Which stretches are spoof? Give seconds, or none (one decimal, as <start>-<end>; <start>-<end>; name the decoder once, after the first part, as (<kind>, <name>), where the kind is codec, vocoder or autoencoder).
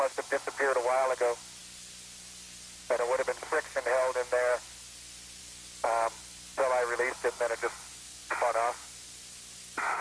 none